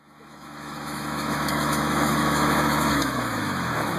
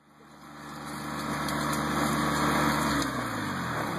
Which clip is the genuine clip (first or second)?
second